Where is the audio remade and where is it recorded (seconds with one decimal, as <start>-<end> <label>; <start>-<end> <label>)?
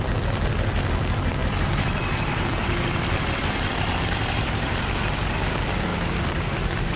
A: 0.0-4.2 recorded; 4.2-4.8 remade; 4.8-5.9 recorded; 5.9-7.0 remade